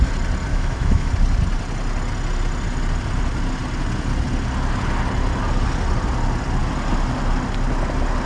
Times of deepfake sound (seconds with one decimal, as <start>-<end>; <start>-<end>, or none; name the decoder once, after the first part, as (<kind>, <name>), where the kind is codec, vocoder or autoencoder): 0.5-1.1 (autoencoder, DAC-VAE)

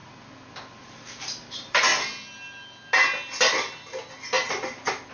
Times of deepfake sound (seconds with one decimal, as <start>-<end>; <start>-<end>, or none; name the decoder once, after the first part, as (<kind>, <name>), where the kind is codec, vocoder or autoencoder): 0.8-1.9 (vocoder, BigVGAN v2)

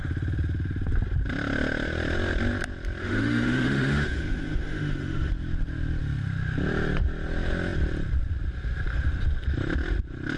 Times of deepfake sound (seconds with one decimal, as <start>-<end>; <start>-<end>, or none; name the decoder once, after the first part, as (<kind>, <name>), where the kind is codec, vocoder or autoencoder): 3.0-5.3 (autoencoder, DAC-VAE)

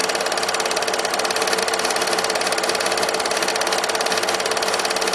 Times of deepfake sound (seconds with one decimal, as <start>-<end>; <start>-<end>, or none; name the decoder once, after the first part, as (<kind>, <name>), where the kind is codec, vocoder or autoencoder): 0.0-1.1 (vocoder, BigVGAN v2); 1.6-3.5